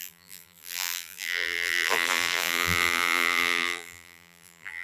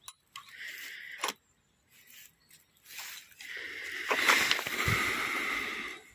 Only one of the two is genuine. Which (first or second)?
second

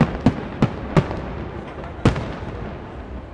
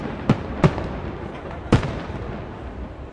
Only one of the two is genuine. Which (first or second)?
first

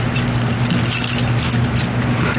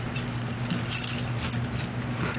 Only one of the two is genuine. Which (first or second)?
second